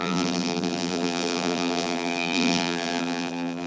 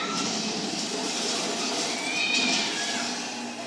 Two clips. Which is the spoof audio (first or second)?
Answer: first